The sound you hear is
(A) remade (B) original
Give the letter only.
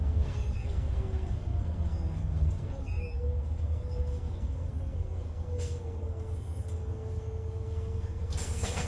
A